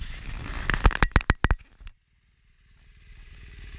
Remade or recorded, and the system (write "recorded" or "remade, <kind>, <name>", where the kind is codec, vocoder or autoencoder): recorded